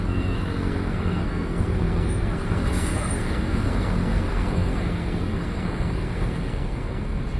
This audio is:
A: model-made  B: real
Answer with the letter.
A